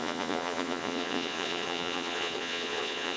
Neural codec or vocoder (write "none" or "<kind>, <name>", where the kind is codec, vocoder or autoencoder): vocoder, Vocos